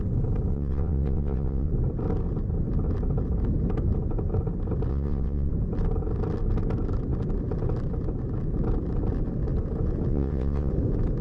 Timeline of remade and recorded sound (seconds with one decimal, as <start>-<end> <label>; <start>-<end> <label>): 0.0-0.5 recorded; 0.5-1.7 remade; 1.7-4.9 recorded; 4.9-5.5 remade; 5.5-10.1 recorded; 10.1-10.7 remade; 10.7-11.2 recorded